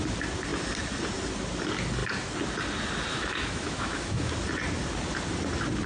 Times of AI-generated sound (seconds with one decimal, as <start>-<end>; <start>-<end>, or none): 3.1-4.3